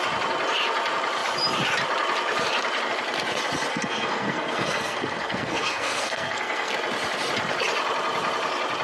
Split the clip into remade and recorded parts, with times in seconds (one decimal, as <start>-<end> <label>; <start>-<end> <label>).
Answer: 0.0-3.7 recorded; 3.7-6.7 remade; 6.7-8.8 recorded